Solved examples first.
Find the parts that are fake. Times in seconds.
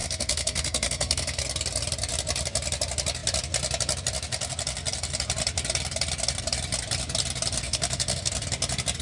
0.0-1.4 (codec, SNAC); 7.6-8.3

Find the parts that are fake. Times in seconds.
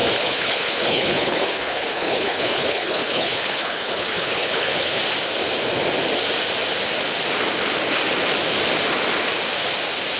0.0-5.0 (codec, HILCodec)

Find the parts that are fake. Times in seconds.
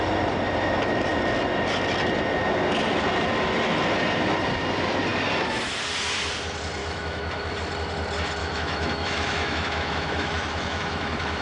6.8-7.5 (autoencoder, DAC-VAE); 8.4-11.4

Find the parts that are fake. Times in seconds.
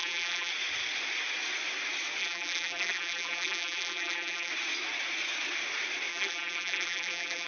0.0-0.5 (vocoder, BigVGAN v2); 2.2-4.5; 6.1-7.5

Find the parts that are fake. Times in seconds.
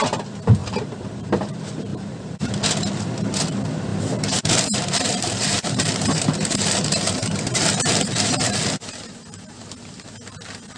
0.6-1.5 (vocoder, BigVGAN v2); 1.9-2.5; 3.9-8.3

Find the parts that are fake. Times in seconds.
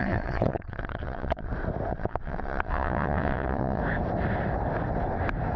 0.0-1.5 (vocoder, WaveNeXt); 1.9-3.8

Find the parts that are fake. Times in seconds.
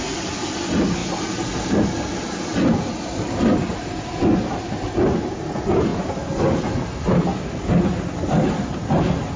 none